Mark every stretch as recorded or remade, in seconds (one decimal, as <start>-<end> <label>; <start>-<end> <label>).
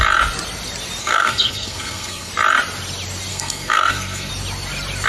0.0-1.0 recorded; 1.0-2.3 remade; 2.3-3.3 recorded; 3.3-4.3 remade; 4.3-5.1 recorded